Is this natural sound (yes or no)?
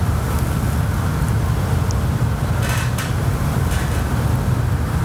yes